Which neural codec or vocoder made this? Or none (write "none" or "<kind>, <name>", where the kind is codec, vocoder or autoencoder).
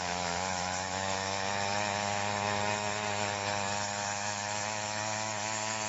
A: autoencoder, DAC-VAE